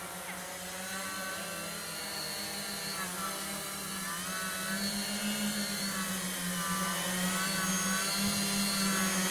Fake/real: real